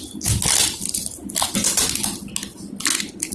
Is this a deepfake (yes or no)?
no